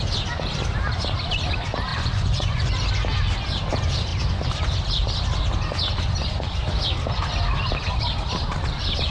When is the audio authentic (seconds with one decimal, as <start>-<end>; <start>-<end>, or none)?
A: 0.0-1.9; 2.7-9.1